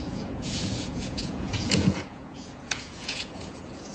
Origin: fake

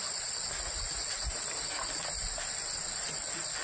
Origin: real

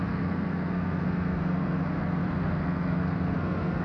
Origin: fake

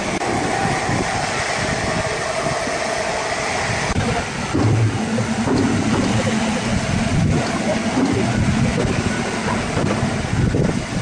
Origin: real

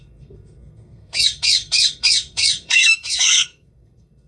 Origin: fake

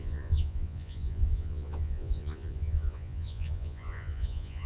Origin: fake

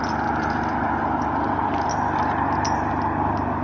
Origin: real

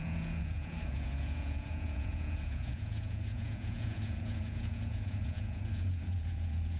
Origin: fake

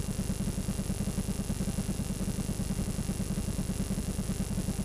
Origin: real